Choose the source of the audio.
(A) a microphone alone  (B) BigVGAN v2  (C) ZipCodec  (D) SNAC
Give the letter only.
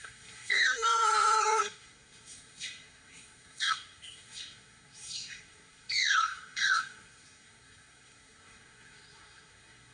D